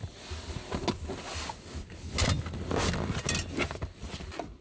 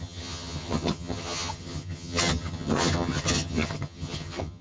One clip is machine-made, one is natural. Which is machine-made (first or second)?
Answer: second